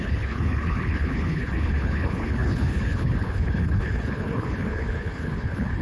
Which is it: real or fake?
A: fake